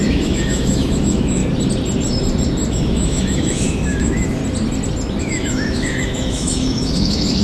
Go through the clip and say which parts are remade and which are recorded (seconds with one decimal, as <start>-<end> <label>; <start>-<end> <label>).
0.0-1.4 remade; 1.4-2.7 recorded; 2.7-4.4 remade; 4.4-5.2 recorded; 5.2-7.4 remade